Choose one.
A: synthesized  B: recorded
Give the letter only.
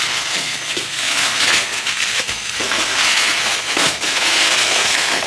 A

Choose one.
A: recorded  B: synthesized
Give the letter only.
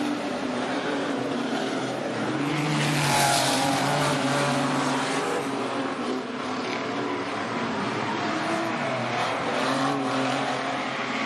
B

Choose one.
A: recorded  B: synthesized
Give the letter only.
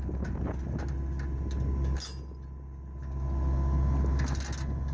A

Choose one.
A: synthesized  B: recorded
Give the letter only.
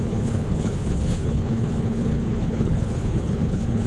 A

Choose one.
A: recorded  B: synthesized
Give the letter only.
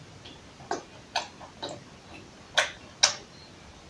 A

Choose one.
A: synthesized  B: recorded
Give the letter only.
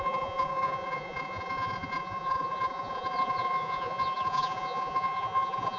A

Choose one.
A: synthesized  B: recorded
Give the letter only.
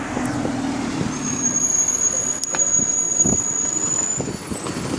B